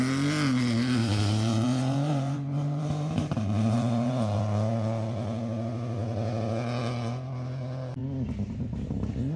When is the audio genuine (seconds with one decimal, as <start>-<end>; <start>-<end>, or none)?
0.0-1.0; 4.4-9.4